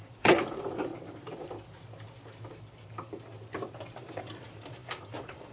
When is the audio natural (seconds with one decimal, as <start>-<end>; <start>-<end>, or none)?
0.9-4.2